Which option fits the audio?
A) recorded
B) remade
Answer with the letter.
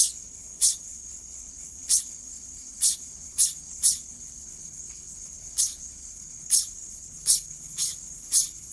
B